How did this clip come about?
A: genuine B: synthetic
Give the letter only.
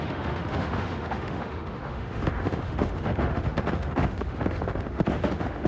B